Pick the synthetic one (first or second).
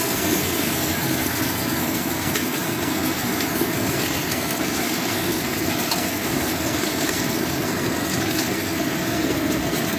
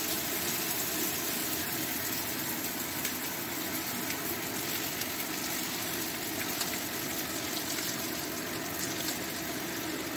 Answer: first